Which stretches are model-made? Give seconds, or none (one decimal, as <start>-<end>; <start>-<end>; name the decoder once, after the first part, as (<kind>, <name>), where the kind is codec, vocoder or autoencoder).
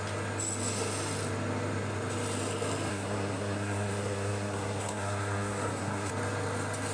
2.9-6.1 (codec, SNAC)